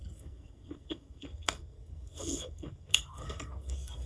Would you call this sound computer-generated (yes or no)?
yes